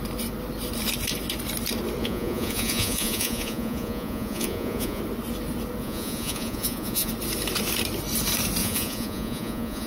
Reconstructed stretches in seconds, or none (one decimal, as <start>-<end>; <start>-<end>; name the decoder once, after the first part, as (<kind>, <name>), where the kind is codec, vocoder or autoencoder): 2.0-5.0 (vocoder, Vocos); 5.8-7.1; 8.6-9.9